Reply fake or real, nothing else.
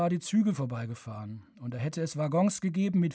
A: real